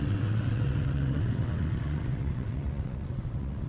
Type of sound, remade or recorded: remade